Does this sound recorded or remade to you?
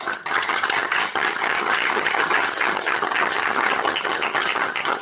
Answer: remade